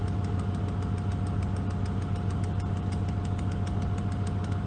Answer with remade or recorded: recorded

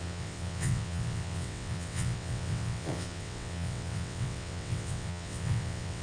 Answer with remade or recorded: remade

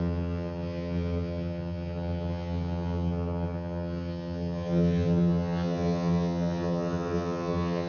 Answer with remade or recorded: remade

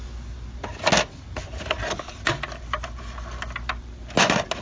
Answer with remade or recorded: recorded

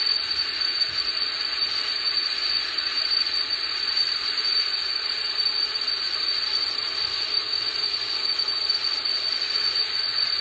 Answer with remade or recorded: remade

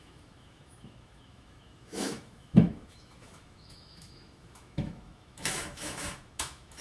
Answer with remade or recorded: remade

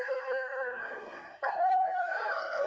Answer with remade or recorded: remade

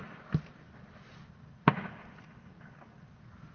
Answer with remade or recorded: recorded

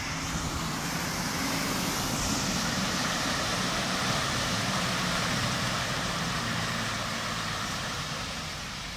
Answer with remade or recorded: remade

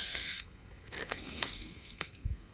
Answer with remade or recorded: remade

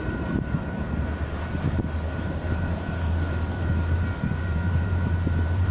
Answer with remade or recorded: remade